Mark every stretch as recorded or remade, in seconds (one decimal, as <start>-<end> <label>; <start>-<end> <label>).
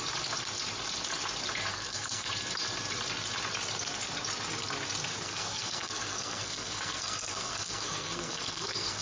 0.0-1.7 recorded; 1.7-2.3 remade; 2.3-5.1 recorded; 5.1-9.0 remade